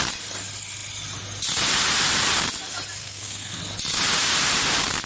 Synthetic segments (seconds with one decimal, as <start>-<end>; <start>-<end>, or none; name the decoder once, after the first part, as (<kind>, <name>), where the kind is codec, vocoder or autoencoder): 3.0-3.6 (codec, SNAC)

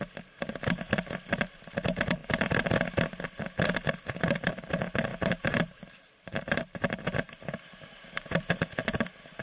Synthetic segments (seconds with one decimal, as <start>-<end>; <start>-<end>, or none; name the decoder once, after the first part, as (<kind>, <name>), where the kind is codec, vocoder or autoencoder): 5.1-8.5 (vocoder, BigVGAN v2)

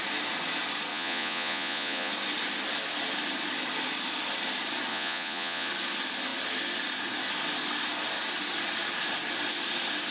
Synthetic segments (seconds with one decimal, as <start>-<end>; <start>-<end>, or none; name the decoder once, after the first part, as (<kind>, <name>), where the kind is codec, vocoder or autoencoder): 0.9-2.1 (vocoder, Vocos); 4.9-5.7

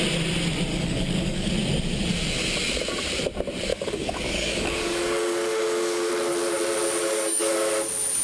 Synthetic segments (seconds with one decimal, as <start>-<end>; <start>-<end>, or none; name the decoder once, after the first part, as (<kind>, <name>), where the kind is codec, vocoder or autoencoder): 0.7-1.5 (codec, DAC); 3.7-6.1; 7.0-7.7

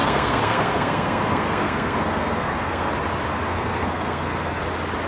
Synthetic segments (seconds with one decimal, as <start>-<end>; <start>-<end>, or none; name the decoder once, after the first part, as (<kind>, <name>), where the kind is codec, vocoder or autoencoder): 0.0-2.9 (codec, SNAC); 3.3-4.6

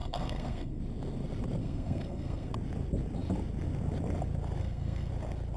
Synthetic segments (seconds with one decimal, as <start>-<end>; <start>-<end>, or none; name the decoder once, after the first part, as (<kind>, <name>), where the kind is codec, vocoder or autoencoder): 0.0-0.8 (codec, SNAC); 1.6-2.5; 4.6-5.1